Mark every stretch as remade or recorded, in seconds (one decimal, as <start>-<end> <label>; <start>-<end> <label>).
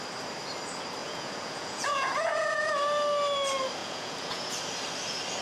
0.0-1.0 recorded; 1.0-2.6 remade; 2.6-3.8 recorded; 3.8-4.5 remade; 4.5-5.4 recorded